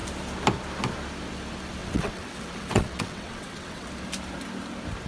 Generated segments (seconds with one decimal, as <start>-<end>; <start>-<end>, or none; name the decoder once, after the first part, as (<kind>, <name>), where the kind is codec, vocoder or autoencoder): 1.8-3.9 (vocoder, WaveNeXt)